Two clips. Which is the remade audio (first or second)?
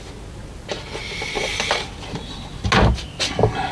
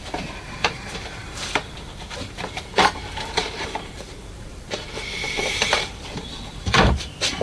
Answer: second